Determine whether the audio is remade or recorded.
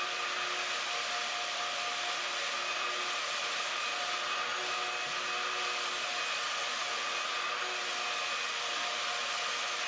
recorded